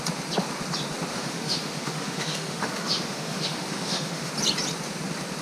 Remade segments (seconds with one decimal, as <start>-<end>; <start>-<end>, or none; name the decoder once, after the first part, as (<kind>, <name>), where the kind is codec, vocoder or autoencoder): 1.1-4.3 (autoencoder, DAC-VAE)